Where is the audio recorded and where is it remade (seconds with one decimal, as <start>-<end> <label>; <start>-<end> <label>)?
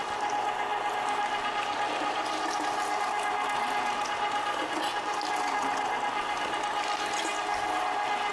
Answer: 0.0-8.3 recorded